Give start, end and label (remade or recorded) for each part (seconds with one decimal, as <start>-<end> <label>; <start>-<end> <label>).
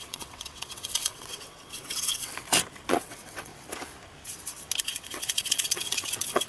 0.0-2.3 remade; 2.3-2.9 recorded; 2.9-3.5 remade; 3.5-4.8 recorded; 4.8-6.5 remade